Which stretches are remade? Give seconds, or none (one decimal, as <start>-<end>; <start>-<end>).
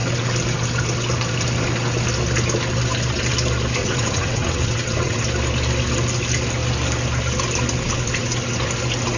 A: 3.8-5.2